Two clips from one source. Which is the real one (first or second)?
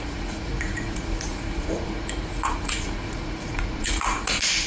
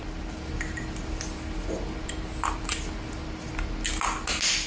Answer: second